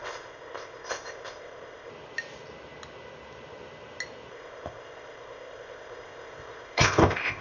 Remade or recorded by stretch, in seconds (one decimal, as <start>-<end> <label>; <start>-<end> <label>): 0.0-1.9 remade; 1.9-4.3 recorded; 4.3-7.4 remade

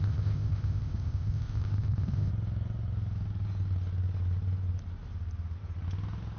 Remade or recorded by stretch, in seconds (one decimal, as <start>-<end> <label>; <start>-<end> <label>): 0.0-2.3 remade; 2.3-6.4 recorded

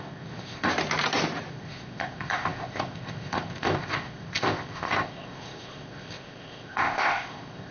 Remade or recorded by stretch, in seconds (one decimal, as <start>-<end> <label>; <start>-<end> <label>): 0.0-0.7 remade; 0.7-1.5 recorded; 1.5-7.7 remade

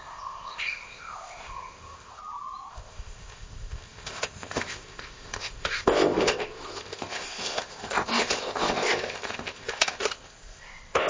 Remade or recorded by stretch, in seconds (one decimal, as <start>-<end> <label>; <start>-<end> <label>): 0.0-2.2 remade; 2.2-2.7 recorded; 2.7-11.1 remade

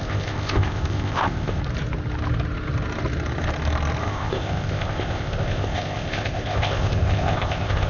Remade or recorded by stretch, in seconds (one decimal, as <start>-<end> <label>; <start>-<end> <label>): 0.0-1.6 remade; 1.6-4.0 recorded; 4.0-7.9 remade

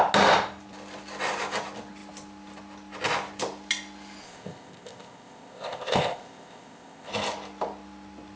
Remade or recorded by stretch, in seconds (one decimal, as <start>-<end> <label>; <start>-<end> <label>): 0.0-4.2 recorded; 4.2-7.1 remade; 7.1-8.4 recorded